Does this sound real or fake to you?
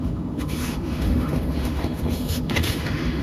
fake